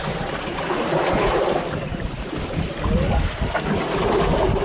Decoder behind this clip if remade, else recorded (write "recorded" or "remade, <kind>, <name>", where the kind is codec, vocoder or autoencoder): recorded